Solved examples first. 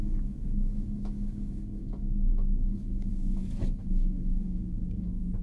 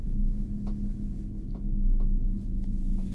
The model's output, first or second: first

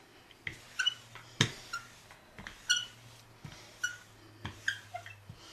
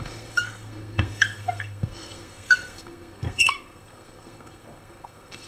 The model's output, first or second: second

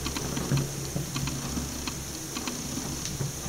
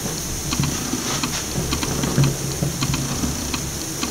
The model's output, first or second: second